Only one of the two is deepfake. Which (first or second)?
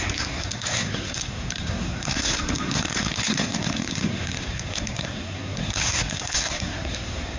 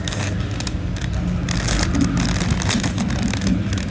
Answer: first